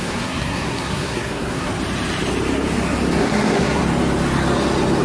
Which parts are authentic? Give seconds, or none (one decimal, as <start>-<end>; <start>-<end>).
1.7-3.2; 3.8-5.0